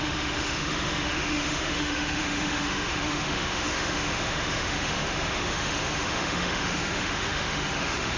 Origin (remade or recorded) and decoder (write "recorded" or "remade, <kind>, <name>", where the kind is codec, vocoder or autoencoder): remade, autoencoder, DAC-VAE